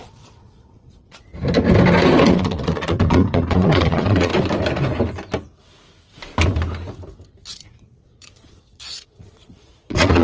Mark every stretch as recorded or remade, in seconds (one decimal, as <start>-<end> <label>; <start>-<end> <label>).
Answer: 0.0-1.3 remade; 1.3-2.3 recorded; 2.3-4.3 remade; 4.3-7.5 recorded; 7.5-10.2 remade